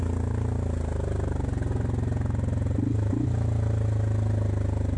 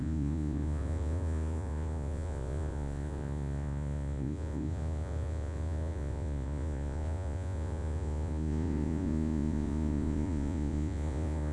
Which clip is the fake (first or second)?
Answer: second